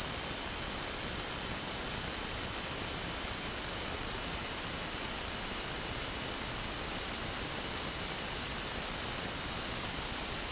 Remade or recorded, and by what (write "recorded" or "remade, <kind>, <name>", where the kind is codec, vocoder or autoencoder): recorded